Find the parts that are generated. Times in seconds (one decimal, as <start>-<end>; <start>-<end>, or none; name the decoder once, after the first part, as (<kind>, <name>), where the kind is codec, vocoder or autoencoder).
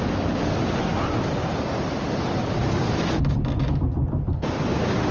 none